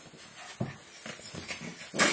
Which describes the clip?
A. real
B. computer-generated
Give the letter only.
A